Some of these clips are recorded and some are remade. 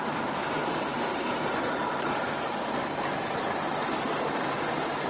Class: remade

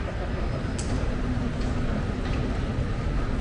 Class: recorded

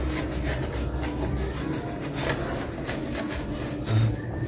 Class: recorded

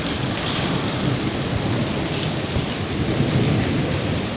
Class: remade